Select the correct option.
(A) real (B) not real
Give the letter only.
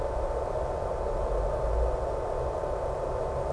A